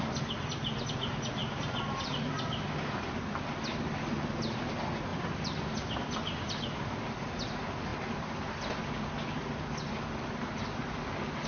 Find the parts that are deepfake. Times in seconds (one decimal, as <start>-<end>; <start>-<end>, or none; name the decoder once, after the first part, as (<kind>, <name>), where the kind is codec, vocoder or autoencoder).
1.4-3.4 (vocoder, BigVGAN v2); 5.1-5.7